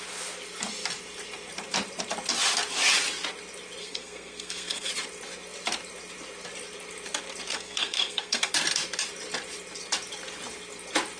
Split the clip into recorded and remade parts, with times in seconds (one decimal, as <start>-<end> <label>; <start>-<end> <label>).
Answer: 0.0-3.8 recorded; 3.8-4.9 remade; 4.9-7.5 recorded; 7.5-8.5 remade; 8.5-11.2 recorded